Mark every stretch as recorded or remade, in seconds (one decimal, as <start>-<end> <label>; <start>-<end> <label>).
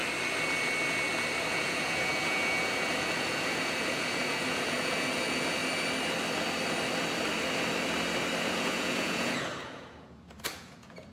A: 0.0-1.5 recorded; 1.5-5.6 remade; 5.6-8.4 recorded; 8.4-11.1 remade